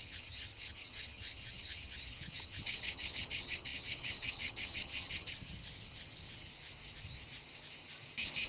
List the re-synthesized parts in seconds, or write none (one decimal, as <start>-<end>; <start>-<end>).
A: 0.0-6.5